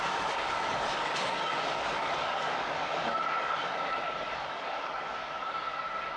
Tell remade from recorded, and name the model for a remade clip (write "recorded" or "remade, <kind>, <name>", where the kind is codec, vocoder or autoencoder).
remade, codec, DAC